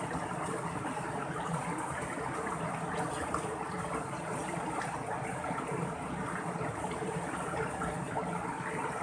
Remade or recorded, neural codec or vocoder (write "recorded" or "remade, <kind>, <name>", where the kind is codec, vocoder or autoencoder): recorded